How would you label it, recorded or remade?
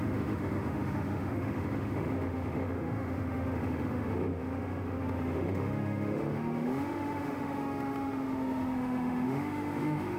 remade